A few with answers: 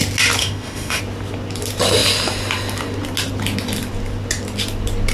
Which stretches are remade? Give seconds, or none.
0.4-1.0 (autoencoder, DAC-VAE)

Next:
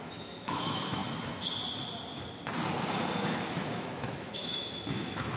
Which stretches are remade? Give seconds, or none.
0.0-1.0 (autoencoder, DAC-VAE); 3.2-5.4

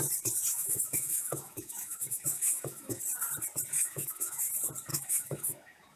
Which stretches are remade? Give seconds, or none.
0.5-3.0 (autoencoder, DAC-VAE); 3.8-4.5; 4.9-6.0

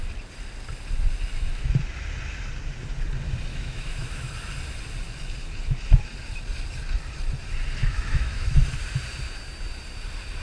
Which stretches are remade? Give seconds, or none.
3.5-4.3 (autoencoder, DAC-VAE); 7.8-8.8

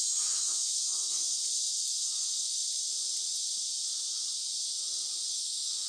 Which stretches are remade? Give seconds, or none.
0.0-1.4 (autoencoder, DAC-VAE); 1.9-2.6; 5.3-5.9